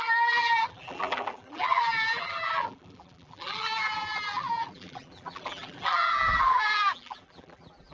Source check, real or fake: fake